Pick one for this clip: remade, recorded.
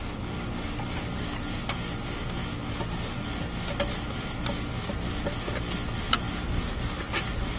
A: recorded